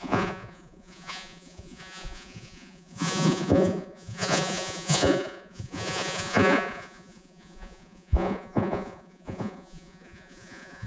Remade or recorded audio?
remade